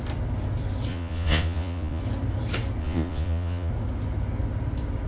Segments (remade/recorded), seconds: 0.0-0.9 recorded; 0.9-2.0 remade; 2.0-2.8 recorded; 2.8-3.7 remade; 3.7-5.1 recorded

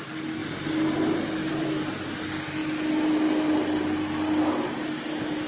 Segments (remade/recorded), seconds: 0.0-1.5 recorded; 1.5-2.0 remade; 2.0-5.5 recorded

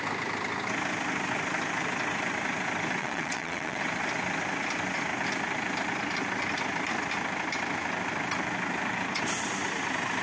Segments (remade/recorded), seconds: 0.0-3.0 recorded; 3.0-3.8 remade; 3.8-10.2 recorded